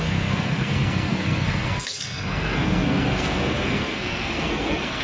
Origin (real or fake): fake